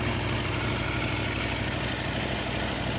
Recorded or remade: recorded